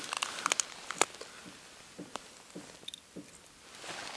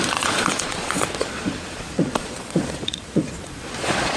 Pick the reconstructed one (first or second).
second